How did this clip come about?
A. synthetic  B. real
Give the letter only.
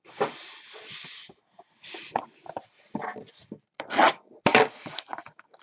B